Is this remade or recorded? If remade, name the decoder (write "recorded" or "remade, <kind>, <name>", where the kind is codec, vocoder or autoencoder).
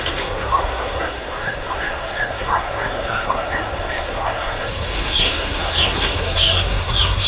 remade, codec, SNAC